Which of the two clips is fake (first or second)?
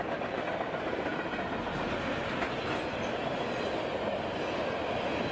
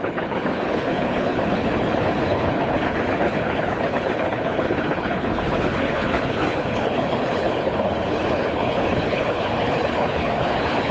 second